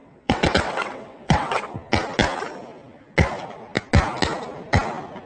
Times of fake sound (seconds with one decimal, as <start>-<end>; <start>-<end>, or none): 0.0-1.7